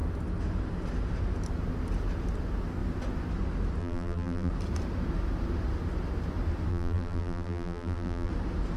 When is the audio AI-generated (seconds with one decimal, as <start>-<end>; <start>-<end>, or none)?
3.8-4.5; 6.7-8.3